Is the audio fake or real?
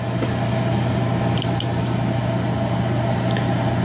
real